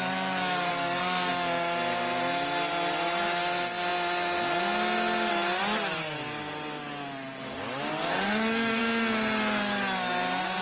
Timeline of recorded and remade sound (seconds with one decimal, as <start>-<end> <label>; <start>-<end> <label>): 0.0-0.7 recorded; 0.7-1.3 remade; 1.3-8.1 recorded; 8.1-8.8 remade; 8.8-10.6 recorded